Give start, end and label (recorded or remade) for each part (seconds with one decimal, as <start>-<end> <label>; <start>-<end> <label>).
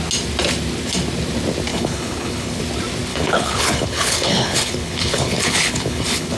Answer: 0.0-1.7 recorded; 1.7-2.6 remade; 2.6-3.1 recorded; 3.1-6.4 remade